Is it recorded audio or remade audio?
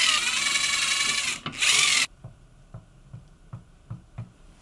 recorded